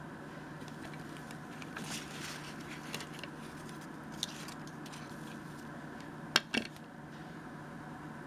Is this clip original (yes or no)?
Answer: yes